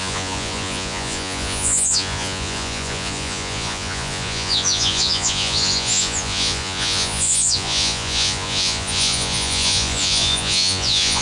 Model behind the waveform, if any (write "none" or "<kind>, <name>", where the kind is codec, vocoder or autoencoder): vocoder, Vocos